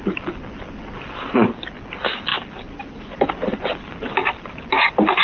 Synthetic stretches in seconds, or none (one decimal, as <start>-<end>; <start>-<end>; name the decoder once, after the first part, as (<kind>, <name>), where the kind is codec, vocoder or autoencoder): none